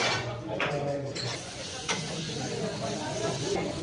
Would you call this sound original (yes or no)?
no